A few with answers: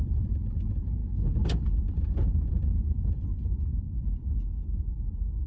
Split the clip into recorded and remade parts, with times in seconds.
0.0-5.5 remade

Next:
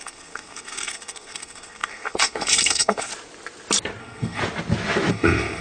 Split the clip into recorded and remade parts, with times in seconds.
0.0-3.1 remade; 3.1-4.0 recorded; 4.0-4.4 remade; 4.4-5.1 recorded; 5.1-5.6 remade

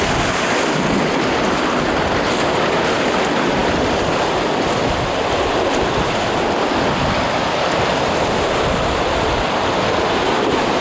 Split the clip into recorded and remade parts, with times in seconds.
0.0-10.8 recorded

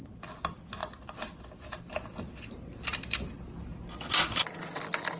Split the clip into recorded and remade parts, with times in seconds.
0.0-5.2 recorded

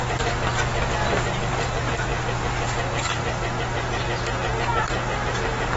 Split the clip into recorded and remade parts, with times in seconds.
0.0-5.8 recorded

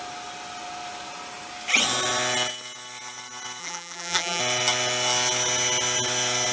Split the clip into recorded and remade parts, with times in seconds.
0.0-3.6 recorded; 3.6-4.4 remade; 4.4-6.5 recorded